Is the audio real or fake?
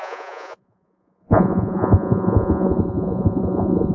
fake